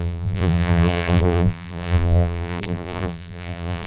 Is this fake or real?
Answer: fake